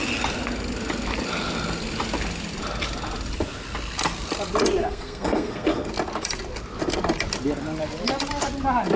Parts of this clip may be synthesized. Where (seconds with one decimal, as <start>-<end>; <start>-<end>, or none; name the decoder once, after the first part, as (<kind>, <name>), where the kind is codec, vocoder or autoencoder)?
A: 4.8-5.9 (codec, SNAC)